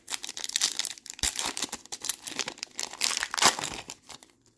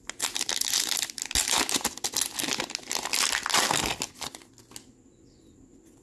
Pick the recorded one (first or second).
second